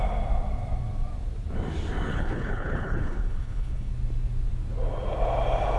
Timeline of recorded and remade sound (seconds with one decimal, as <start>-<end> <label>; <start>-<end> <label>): 0.0-2.1 recorded; 2.1-3.9 remade; 3.9-5.8 recorded